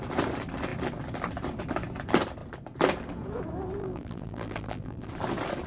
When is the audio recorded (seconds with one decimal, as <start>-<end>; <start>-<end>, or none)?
0.0-3.8; 5.1-5.7